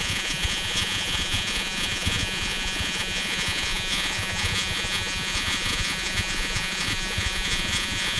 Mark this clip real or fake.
fake